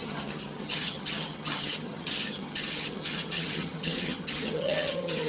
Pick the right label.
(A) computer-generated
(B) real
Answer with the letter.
A